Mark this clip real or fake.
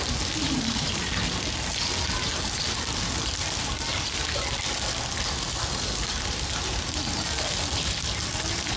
real